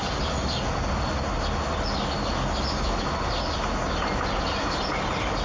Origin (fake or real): real